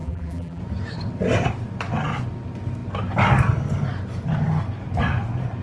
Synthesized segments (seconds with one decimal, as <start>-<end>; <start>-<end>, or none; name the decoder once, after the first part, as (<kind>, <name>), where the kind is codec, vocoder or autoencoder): 0.0-0.6 (vocoder, BigVGAN v2)